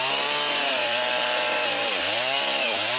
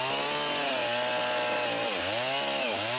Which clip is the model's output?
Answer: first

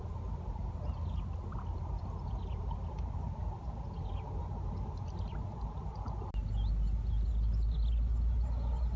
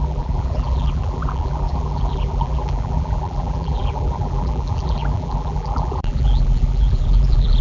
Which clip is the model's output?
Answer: second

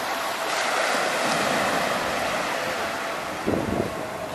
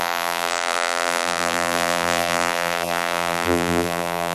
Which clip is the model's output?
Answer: second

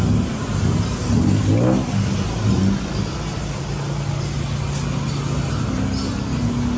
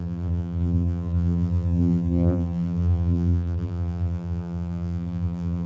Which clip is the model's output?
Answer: second